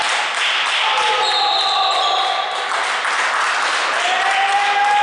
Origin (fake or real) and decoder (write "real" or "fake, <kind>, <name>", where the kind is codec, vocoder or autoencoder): real